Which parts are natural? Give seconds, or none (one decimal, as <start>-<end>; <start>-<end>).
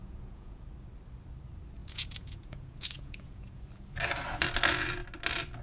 0.6-1.8; 3.6-5.6